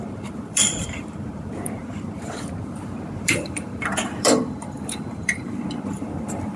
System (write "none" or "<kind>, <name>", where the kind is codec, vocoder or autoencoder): vocoder, BigVGAN v2